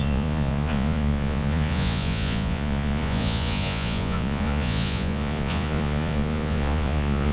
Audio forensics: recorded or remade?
remade